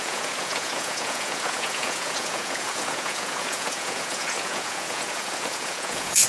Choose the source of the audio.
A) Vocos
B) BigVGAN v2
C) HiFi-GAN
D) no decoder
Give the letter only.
A